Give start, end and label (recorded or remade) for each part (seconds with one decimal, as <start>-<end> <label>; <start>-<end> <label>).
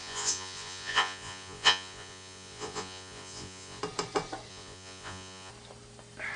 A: 0.0-3.8 remade; 3.8-4.5 recorded; 4.5-5.5 remade; 5.5-6.4 recorded